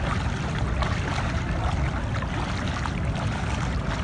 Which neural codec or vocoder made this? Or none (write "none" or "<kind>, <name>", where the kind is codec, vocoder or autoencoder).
none